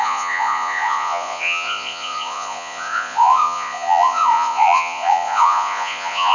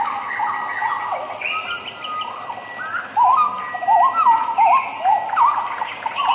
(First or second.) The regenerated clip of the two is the first